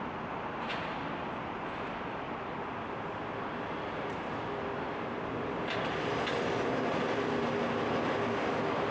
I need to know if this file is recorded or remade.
recorded